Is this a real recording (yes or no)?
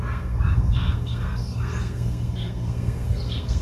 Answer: no